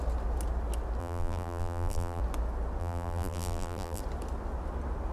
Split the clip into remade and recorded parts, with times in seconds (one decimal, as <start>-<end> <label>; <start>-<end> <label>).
0.0-1.0 recorded; 1.0-2.2 remade; 2.2-2.8 recorded; 2.8-4.0 remade; 4.0-5.1 recorded